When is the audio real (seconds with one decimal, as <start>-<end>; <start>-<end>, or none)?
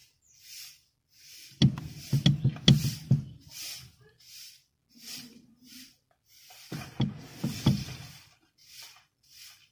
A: 0.0-9.7